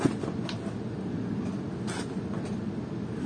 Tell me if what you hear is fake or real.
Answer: real